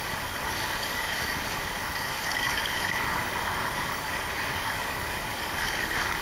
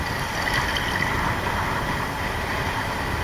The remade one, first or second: first